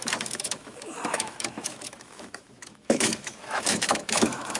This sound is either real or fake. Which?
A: fake